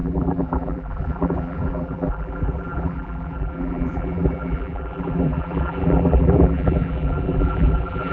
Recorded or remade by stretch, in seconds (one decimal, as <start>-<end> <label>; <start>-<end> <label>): 0.0-8.1 remade